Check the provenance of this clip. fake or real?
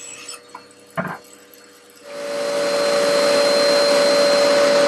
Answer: real